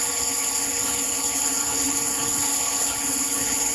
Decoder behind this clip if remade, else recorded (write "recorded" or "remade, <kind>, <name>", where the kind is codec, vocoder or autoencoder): remade, codec, HILCodec